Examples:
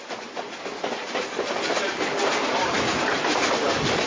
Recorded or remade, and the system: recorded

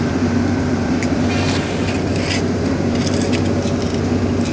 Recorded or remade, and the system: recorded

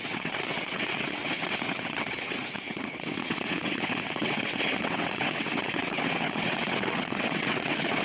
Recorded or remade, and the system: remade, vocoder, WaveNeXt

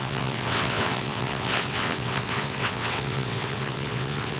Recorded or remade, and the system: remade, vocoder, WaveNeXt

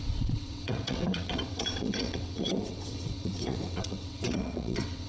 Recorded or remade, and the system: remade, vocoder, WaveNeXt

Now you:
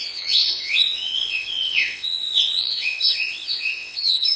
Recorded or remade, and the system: remade, vocoder, WaveNeXt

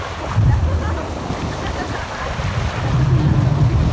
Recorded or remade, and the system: recorded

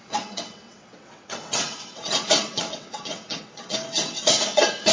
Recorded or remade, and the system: remade, vocoder, WaveNeXt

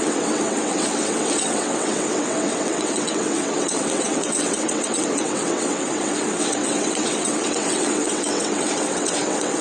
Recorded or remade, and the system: remade, vocoder, WaveNeXt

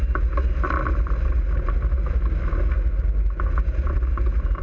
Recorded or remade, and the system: recorded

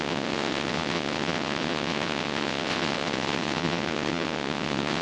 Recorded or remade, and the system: remade, vocoder, WaveNeXt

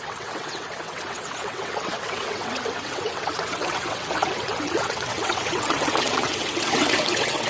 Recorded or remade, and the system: remade, vocoder, WaveNeXt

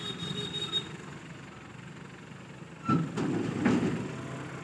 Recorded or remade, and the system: recorded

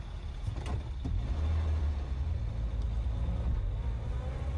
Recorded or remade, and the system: recorded